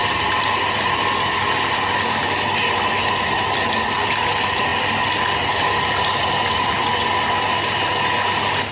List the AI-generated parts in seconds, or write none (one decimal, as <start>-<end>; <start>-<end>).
none